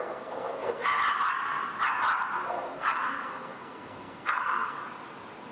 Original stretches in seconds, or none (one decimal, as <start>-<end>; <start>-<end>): 0.9-2.5; 4.8-5.5